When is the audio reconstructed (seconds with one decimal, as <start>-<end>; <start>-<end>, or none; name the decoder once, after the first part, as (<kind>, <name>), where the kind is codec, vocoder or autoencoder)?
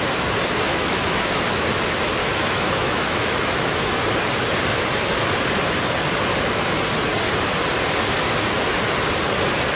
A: 0.7-1.4 (autoencoder, DAC-VAE); 2.2-3.9